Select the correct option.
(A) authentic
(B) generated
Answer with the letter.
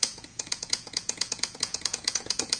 B